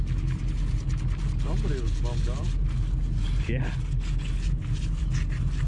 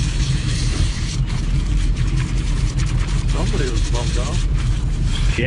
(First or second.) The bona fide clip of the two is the first